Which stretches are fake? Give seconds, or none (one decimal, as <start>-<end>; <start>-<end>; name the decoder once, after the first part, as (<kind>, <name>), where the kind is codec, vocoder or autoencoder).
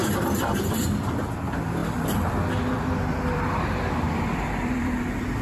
0.0-1.2 (vocoder, BigVGAN v2); 1.8-5.0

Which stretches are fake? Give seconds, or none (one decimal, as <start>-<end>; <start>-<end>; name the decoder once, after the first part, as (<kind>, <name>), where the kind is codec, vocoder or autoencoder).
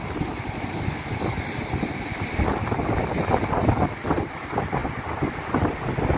none